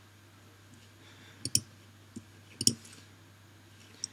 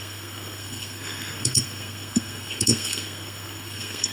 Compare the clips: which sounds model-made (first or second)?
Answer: second